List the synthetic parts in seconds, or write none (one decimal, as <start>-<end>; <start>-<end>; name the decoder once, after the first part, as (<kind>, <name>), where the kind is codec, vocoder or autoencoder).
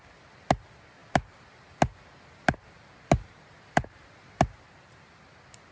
none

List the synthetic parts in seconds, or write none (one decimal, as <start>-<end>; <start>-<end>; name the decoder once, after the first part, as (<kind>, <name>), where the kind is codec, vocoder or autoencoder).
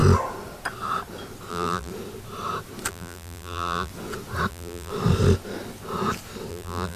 1.5-1.9 (vocoder, BigVGAN v2); 2.9-3.9; 4.5-4.9; 6.5-7.0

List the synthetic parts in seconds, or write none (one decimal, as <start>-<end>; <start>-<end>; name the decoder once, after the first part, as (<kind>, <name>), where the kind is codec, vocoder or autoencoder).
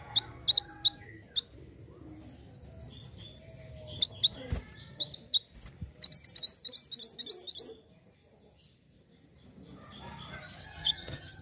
10.6-11.4 (vocoder, HiFi-GAN)